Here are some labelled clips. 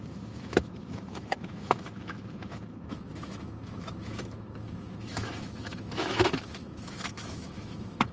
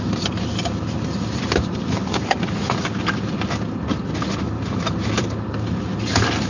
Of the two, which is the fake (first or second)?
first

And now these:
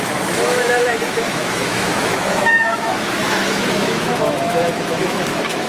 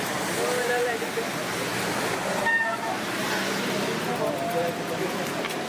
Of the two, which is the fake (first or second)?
first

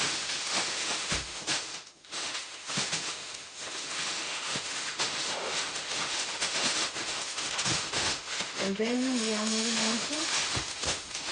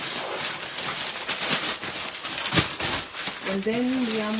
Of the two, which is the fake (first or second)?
first